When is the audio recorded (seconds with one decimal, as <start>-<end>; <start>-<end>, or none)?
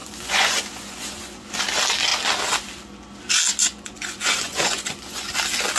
1.5-3.6; 5.3-5.8